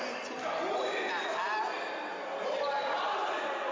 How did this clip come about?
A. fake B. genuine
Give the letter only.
B